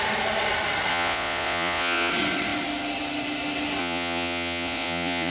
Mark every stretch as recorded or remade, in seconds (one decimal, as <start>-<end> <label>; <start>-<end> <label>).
0.0-0.9 recorded; 0.9-2.1 remade; 2.1-3.8 recorded; 3.8-5.3 remade

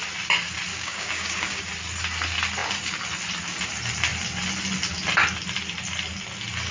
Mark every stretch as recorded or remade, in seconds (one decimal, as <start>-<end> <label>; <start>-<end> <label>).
0.0-0.7 recorded; 0.7-1.6 remade; 1.6-6.7 recorded

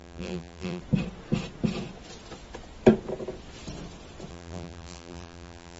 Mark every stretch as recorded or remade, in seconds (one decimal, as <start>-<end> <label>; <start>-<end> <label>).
0.0-0.8 remade; 0.8-4.3 recorded; 4.3-5.8 remade

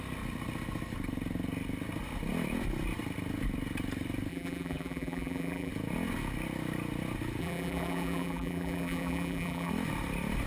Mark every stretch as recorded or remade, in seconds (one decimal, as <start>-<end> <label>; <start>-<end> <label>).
0.0-4.3 recorded; 4.3-5.7 remade; 5.7-7.4 recorded; 7.4-9.7 remade; 9.7-10.5 recorded

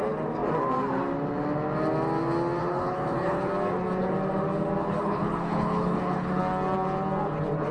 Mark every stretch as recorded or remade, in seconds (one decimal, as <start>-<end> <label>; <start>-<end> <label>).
0.0-2.6 recorded; 2.6-3.5 remade; 3.5-4.8 recorded; 4.8-6.4 remade; 6.4-7.7 recorded